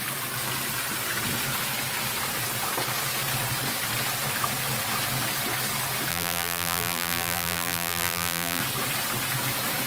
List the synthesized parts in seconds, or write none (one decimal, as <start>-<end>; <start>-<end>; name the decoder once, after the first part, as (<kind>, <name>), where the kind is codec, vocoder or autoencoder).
6.1-8.6 (vocoder, BigVGAN v2)